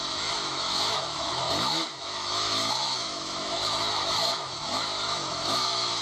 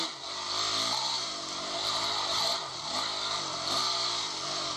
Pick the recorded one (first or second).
second